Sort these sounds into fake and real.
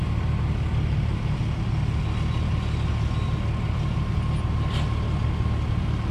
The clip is real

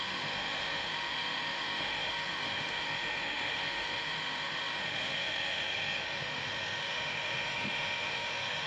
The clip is fake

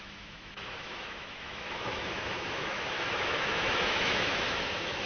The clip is fake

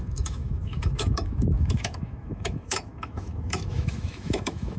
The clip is fake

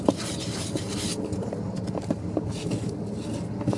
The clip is real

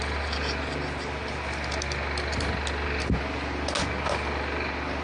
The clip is real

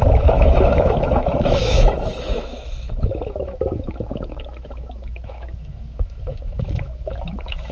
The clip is fake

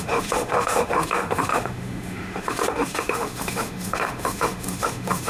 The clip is fake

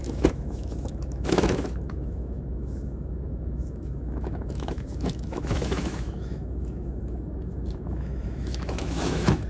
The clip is fake